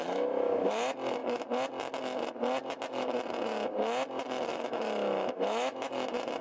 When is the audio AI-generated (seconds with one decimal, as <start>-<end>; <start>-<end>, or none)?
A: 0.0-0.7; 4.5-5.9